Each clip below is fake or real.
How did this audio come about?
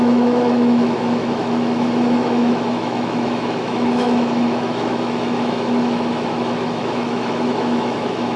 fake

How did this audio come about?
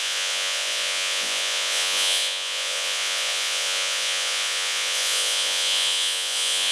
fake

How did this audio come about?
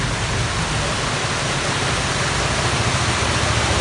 real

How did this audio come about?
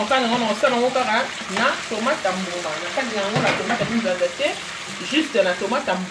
real